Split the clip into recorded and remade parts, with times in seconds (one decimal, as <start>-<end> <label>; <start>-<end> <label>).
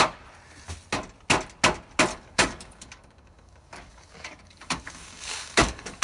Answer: 0.0-2.1 recorded; 2.1-6.0 remade